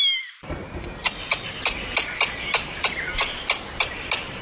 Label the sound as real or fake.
real